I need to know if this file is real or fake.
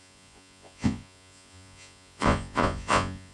fake